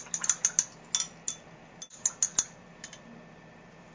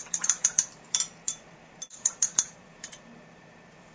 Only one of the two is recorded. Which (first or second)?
first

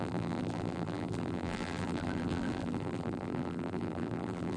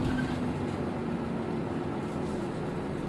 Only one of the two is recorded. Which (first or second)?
second